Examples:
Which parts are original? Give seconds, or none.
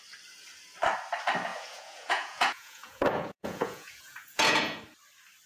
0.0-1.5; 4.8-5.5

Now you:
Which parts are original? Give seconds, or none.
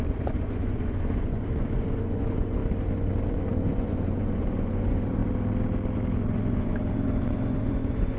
2.6-3.3; 5.2-6.2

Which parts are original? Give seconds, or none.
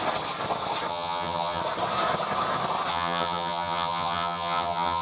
0.0-0.9; 1.6-2.9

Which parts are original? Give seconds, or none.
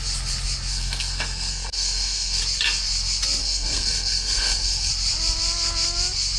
0.0-0.7; 2.4-3.4; 4.9-6.4